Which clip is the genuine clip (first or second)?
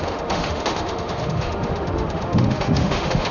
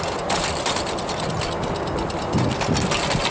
second